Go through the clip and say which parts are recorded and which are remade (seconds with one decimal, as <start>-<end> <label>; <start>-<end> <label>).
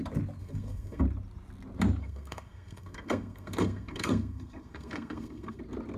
0.0-0.4 recorded; 0.4-1.0 remade; 1.0-2.0 recorded; 2.0-5.6 remade; 5.6-6.0 recorded